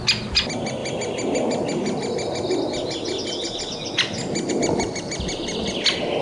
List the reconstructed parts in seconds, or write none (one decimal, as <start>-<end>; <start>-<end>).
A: none